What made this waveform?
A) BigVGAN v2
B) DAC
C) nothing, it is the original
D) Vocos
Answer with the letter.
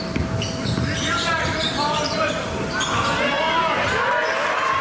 C